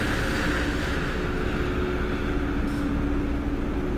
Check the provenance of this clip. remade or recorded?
recorded